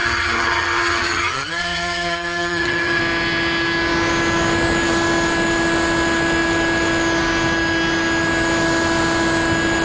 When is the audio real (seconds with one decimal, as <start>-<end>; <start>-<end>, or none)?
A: 3.0-9.8